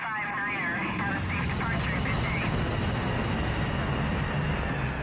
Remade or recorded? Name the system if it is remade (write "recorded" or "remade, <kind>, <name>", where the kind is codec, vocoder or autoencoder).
recorded